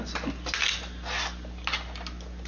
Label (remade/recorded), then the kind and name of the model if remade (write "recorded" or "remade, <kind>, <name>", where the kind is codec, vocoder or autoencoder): recorded